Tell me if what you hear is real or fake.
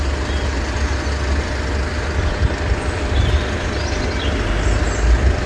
real